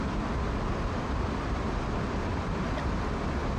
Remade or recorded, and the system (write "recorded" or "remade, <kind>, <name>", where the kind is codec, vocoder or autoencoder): recorded